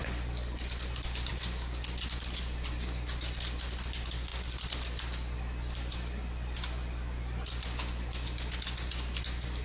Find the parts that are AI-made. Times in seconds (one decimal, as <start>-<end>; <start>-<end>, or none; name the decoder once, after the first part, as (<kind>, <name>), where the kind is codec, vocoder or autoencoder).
none